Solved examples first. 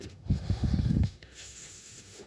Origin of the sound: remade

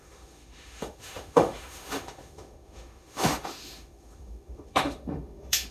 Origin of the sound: remade